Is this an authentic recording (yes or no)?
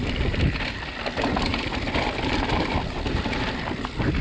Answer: no